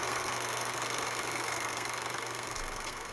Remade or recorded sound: remade